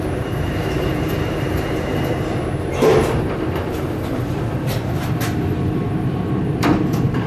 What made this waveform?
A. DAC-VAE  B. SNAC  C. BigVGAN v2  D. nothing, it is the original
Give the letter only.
C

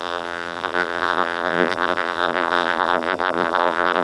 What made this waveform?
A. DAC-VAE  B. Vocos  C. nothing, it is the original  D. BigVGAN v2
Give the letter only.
D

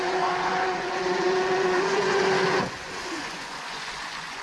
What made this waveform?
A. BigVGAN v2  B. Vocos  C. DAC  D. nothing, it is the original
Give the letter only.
B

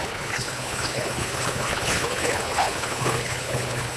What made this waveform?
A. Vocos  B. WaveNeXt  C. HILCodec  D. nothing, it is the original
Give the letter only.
C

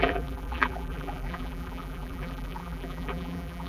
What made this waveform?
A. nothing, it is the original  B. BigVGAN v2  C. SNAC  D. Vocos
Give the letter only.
B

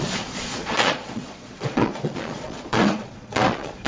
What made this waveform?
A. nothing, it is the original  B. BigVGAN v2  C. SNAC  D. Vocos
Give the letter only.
D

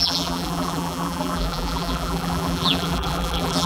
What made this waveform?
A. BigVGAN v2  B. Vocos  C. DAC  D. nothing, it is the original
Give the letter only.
A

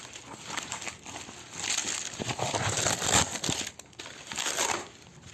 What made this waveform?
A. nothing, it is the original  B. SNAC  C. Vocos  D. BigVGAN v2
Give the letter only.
A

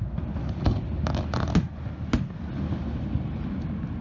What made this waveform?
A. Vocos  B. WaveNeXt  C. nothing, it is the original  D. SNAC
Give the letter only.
C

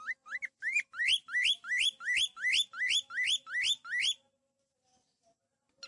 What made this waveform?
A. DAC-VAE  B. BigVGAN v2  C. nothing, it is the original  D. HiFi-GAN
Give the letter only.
C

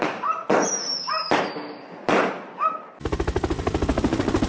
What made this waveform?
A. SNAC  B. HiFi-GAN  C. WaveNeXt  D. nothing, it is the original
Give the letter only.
D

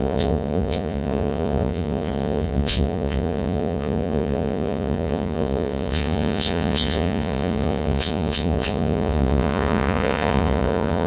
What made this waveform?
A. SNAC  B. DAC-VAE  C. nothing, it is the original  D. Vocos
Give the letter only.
D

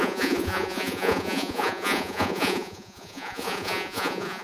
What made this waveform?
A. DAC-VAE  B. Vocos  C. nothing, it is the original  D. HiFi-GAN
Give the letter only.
B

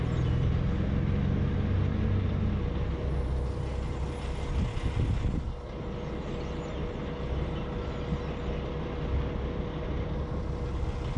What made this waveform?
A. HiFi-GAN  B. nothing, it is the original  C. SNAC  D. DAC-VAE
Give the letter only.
B